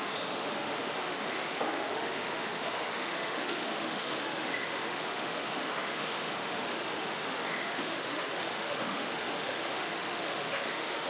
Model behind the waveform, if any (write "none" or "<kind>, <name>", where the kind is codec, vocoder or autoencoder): autoencoder, DAC-VAE